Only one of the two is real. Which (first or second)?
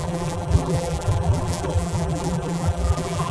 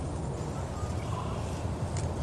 second